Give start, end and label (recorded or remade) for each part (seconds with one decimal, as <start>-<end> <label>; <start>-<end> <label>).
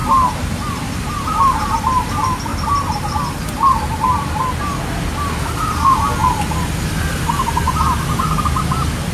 0.0-0.7 remade; 0.7-2.5 recorded; 2.5-4.6 remade; 4.6-9.1 recorded